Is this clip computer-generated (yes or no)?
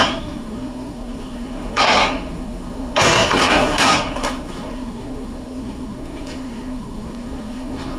yes